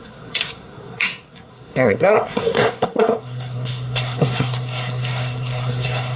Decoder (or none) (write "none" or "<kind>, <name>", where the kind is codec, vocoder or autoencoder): codec, SNAC